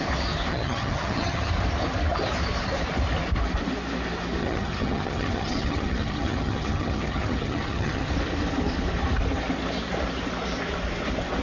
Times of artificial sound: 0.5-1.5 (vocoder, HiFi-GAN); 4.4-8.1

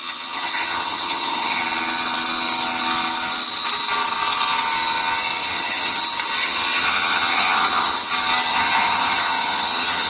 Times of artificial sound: 0.0-1.6 (vocoder, HiFi-GAN); 5.4-6.0; 6.4-8.1; 8.5-10.1

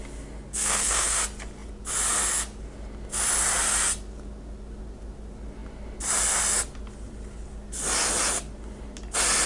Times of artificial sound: 0.5-1.2 (codec, SNAC)

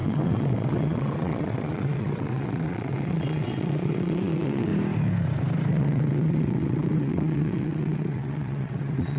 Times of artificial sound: 0.0-4.7 (vocoder, WaveNeXt); 5.7-9.2

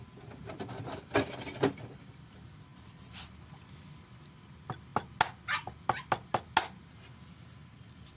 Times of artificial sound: 0.0-4.9 (vocoder, BigVGAN v2)